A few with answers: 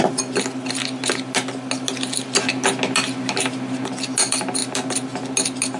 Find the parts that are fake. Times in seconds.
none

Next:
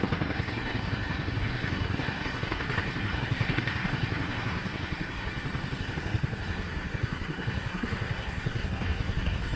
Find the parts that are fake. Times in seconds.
0.0-5.3 (codec, SNAC); 5.8-9.6

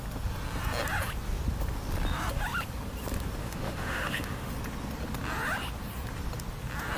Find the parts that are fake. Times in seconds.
3.4-4.5 (autoencoder, DAC-VAE)

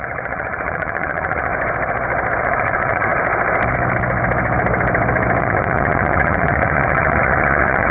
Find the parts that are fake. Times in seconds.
0.0-1.5 (vocoder, Vocos); 2.4-3.1; 5.4-7.9

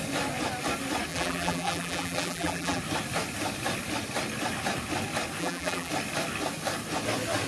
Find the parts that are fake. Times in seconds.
1.1-2.8 (vocoder, BigVGAN v2); 5.4-5.9